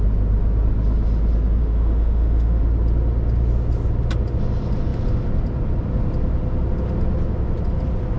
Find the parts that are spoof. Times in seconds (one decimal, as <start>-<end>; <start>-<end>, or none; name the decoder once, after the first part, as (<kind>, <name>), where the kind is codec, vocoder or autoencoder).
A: 1.6-2.6 (autoencoder, DAC-VAE)